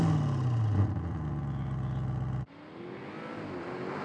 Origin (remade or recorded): recorded